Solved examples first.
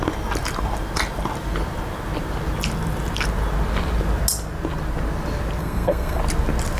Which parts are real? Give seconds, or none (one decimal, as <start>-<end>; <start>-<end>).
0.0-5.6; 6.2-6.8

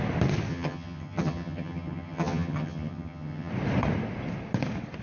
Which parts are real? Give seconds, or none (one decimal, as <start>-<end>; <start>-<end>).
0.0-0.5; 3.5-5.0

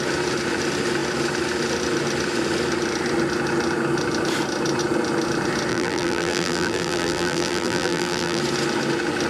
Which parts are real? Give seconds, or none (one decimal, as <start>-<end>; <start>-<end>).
0.0-5.7; 8.4-9.3

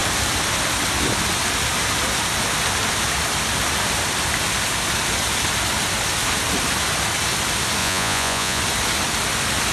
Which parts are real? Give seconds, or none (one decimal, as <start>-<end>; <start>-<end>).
0.0-7.8; 8.6-9.7

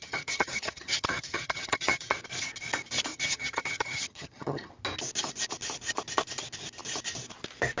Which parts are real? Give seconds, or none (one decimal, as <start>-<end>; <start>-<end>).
2.1-3.1; 4.7-7.8

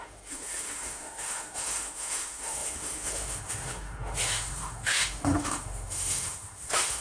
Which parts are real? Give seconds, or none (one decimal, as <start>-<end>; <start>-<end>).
none